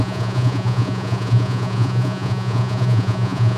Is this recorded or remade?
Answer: remade